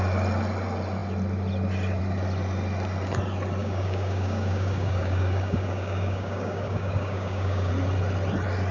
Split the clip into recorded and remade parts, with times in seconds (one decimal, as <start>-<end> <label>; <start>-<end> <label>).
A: 0.0-3.6 recorded; 3.6-7.7 remade; 7.7-8.7 recorded